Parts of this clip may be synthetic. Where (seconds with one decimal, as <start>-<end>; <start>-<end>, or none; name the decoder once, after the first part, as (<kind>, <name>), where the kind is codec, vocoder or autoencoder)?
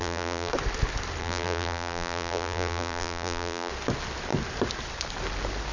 0.0-0.5 (vocoder, BigVGAN v2); 1.2-3.7